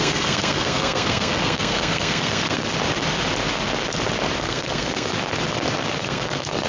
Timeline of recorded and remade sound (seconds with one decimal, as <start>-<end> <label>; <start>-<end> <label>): 0.0-2.7 remade; 2.7-4.4 recorded; 4.4-5.1 remade; 5.1-6.0 recorded; 6.0-6.7 remade